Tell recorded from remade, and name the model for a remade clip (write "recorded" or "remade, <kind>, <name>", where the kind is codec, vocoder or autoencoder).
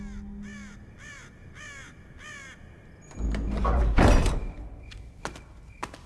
recorded